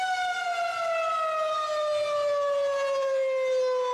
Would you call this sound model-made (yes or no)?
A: no